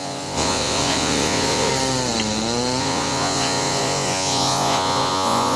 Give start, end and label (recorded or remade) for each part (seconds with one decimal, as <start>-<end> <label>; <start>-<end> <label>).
0.0-1.7 remade; 1.7-2.8 recorded; 2.8-5.6 remade

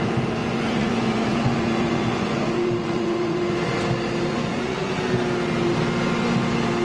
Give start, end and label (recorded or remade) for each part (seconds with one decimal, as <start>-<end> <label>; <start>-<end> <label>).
0.0-0.4 recorded; 0.4-3.8 remade; 3.8-4.3 recorded; 4.3-4.9 remade; 4.9-6.8 recorded

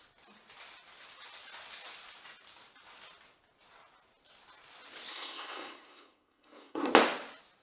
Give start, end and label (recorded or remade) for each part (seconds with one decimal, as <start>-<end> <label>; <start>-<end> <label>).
0.0-5.1 recorded; 5.1-6.9 remade; 6.9-7.6 recorded

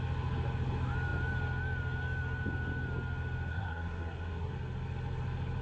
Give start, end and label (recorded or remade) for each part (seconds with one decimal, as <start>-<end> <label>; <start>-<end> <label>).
0.0-3.5 recorded; 3.5-4.5 remade; 4.5-5.6 recorded